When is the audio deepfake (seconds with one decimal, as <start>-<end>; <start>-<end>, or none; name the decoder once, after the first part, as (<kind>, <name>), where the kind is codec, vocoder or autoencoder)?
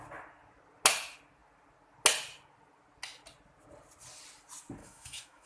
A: 4.8-5.5 (autoencoder, DAC-VAE)